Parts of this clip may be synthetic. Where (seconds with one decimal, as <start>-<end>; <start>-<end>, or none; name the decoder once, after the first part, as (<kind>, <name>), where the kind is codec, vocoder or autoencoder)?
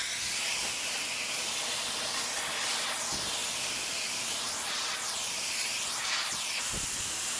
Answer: none